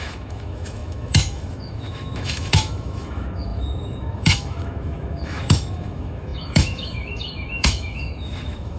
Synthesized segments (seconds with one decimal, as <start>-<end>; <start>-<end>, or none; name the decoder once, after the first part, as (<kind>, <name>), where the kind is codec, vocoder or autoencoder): 0.0-8.8 (autoencoder, DAC-VAE)